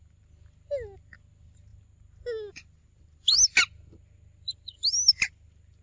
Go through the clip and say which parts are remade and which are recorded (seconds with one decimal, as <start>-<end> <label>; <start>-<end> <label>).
0.0-5.8 recorded

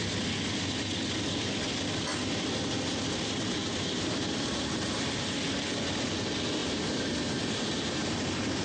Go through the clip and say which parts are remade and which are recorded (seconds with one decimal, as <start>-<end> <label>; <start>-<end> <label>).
0.0-3.6 recorded; 3.6-5.1 remade; 5.1-6.6 recorded; 6.6-8.6 remade

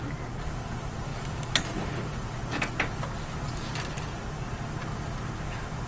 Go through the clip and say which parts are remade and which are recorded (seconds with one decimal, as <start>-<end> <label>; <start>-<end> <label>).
0.0-5.9 recorded

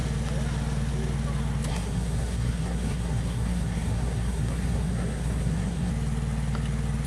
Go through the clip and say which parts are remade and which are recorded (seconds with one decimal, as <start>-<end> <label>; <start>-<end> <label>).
0.0-1.7 recorded; 1.7-5.9 remade; 5.9-7.1 recorded